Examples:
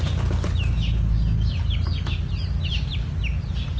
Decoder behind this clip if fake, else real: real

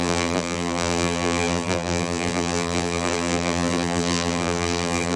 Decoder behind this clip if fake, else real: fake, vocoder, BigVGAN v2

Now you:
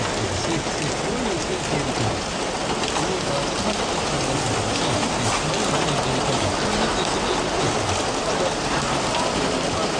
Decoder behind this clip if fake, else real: real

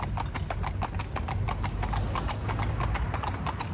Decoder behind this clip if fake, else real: real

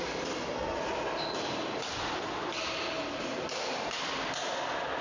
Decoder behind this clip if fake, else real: real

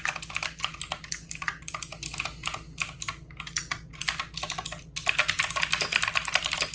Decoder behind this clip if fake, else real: real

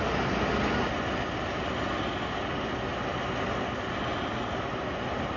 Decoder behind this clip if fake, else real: real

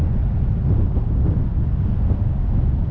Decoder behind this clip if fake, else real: real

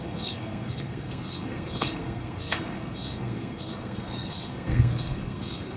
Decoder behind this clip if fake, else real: fake, codec, SNAC